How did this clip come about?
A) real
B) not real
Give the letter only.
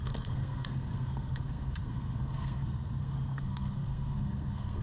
B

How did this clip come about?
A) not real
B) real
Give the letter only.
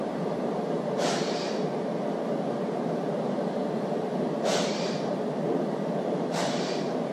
A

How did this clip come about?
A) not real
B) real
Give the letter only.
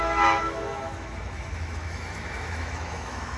A